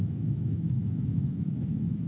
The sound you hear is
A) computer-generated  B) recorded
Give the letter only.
A